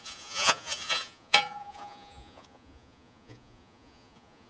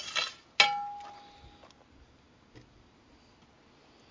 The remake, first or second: first